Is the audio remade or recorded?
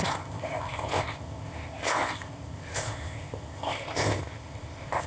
remade